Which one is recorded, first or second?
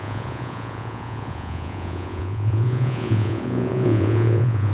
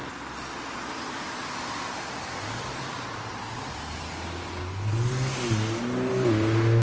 second